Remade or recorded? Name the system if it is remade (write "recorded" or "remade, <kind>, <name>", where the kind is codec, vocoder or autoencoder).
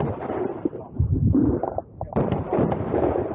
remade, vocoder, BigVGAN v2